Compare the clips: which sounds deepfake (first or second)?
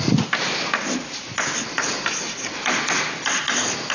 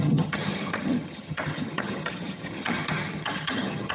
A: second